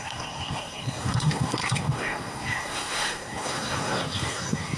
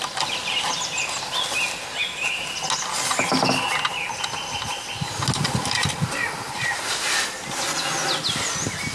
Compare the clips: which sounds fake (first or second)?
first